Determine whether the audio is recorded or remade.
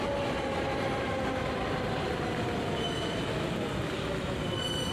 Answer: recorded